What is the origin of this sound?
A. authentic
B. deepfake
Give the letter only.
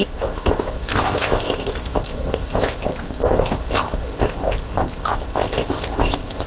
B